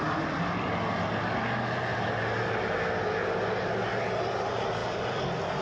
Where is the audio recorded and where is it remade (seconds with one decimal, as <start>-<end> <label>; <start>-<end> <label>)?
0.0-5.6 recorded